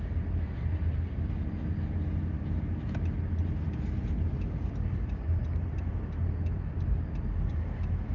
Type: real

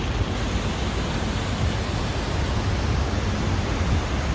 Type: real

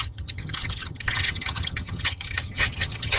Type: fake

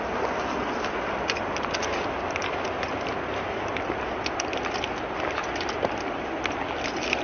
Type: real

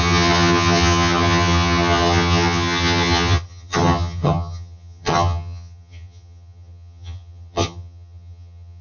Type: fake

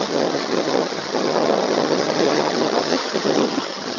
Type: fake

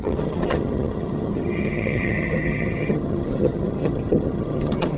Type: fake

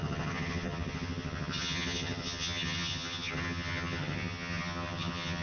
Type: fake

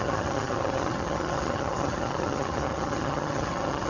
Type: fake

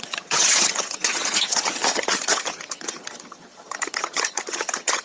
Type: fake